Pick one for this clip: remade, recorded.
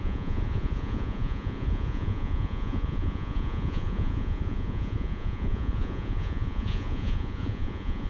remade